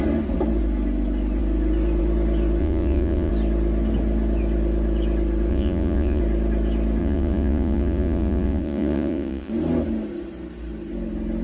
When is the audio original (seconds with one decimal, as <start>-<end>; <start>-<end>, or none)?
0.0-2.6; 3.3-5.5; 6.2-7.0; 9.5-11.4